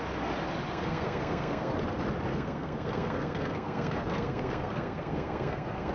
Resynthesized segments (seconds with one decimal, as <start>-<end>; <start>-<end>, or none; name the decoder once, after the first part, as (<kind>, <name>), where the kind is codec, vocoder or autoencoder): 0.7-1.7 (codec, SNAC); 2.3-5.9